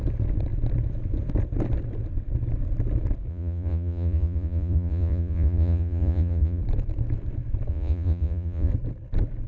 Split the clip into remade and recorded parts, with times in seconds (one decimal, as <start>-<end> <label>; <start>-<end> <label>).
0.0-3.3 recorded; 3.3-6.6 remade; 6.6-7.7 recorded; 7.7-8.7 remade; 8.7-9.5 recorded